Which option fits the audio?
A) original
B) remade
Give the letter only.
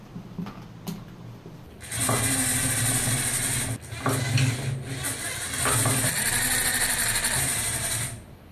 A